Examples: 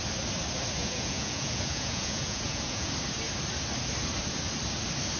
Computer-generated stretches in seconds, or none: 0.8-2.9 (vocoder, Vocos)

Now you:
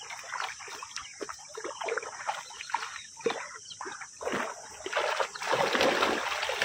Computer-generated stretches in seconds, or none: none